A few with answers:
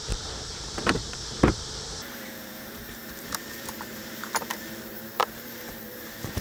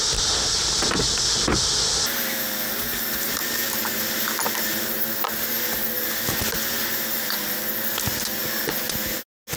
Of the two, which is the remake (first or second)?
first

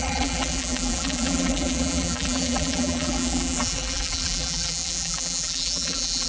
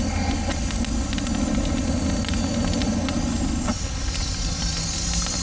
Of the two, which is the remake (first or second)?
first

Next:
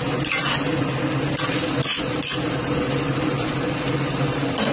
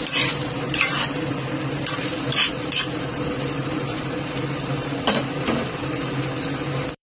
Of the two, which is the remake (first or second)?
second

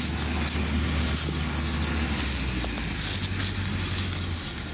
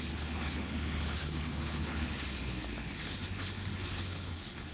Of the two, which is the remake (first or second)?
second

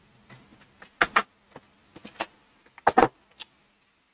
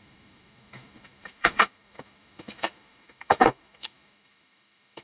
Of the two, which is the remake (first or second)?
second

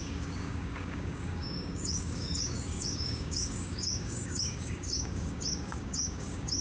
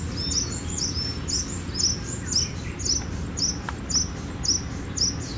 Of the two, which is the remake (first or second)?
first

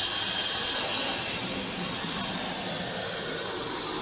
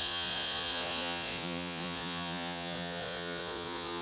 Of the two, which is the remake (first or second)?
second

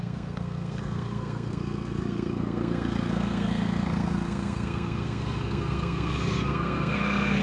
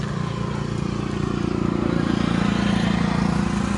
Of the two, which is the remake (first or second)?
first